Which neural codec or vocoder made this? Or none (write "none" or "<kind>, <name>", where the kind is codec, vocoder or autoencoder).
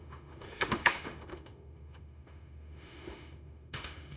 autoencoder, DAC-VAE